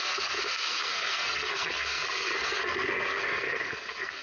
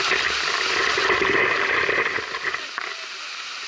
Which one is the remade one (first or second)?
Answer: first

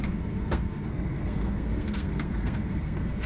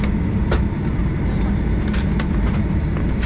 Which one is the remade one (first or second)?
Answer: first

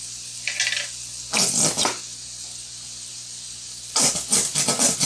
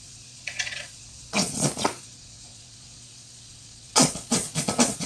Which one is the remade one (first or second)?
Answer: second